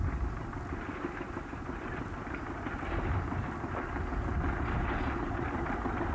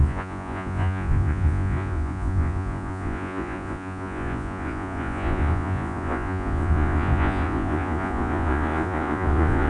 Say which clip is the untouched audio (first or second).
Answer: first